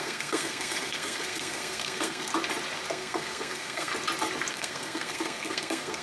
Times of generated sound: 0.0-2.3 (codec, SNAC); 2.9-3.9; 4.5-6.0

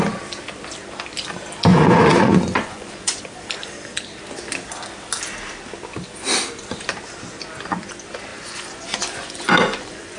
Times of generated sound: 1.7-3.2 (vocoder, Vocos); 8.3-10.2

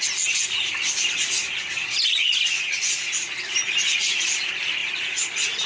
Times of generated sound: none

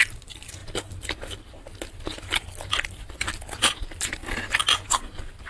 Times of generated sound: 0.0-0.6 (vocoder, BigVGAN v2); 3.6-4.6

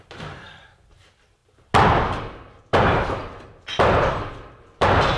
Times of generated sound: 0.0-1.4 (vocoder, BigVGAN v2); 2.6-5.2

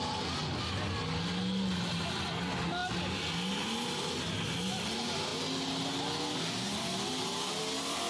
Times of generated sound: none

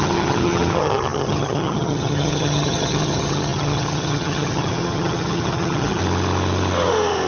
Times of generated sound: 0.0-6.0 (vocoder, HiFi-GAN)